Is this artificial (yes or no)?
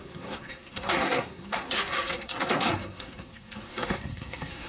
yes